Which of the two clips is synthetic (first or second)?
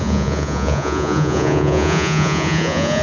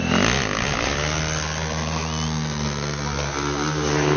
first